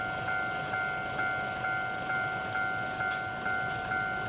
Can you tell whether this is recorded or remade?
recorded